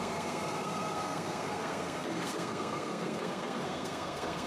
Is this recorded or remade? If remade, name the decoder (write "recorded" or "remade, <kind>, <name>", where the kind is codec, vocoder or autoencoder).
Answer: remade, codec, SNAC